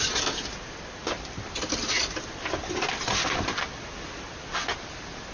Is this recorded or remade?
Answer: recorded